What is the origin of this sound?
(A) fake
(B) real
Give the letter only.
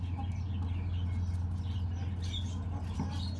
B